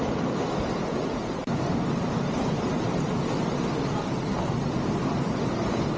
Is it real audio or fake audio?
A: real